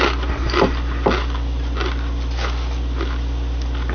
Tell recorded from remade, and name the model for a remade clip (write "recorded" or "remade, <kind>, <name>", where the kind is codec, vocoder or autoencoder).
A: recorded